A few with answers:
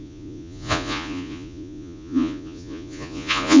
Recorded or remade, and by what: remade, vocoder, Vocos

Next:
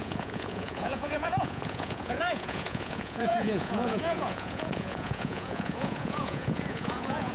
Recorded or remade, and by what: remade, vocoder, Vocos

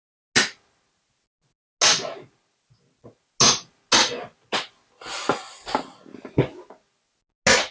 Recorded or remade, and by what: recorded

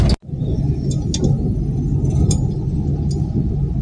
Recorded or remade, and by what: recorded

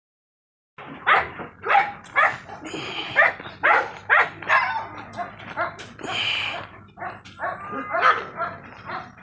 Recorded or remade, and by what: recorded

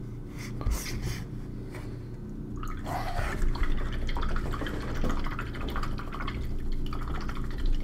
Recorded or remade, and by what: recorded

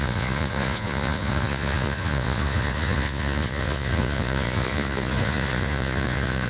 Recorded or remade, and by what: remade, vocoder, Vocos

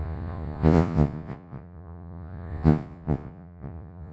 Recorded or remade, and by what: remade, vocoder, Vocos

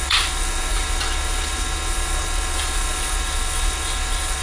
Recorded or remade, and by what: remade, vocoder, Vocos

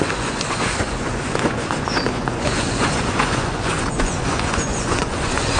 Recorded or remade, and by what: remade, vocoder, Vocos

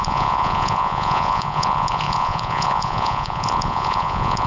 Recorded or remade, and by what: remade, vocoder, Vocos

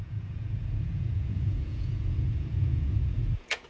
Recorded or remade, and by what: remade, vocoder, Vocos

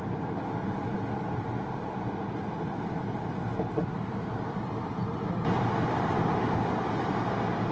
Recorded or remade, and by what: recorded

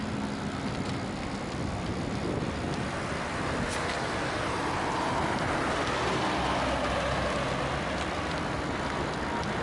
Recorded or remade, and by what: recorded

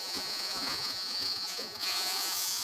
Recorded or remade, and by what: remade, vocoder, Vocos